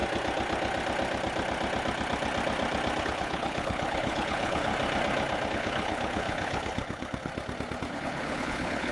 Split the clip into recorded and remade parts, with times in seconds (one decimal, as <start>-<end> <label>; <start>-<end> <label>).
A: 0.0-3.0 recorded; 3.0-4.7 remade; 4.7-5.5 recorded; 5.5-7.3 remade; 7.3-7.9 recorded; 7.9-8.9 remade